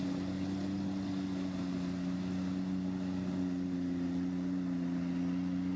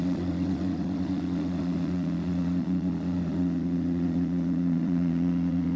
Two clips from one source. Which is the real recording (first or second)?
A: first